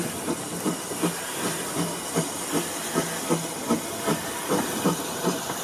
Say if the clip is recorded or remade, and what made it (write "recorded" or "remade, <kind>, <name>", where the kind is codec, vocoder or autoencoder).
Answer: recorded